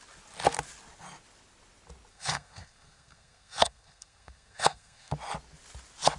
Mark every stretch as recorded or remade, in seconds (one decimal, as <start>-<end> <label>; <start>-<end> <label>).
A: 0.0-2.1 recorded; 2.1-5.1 remade; 5.1-6.2 recorded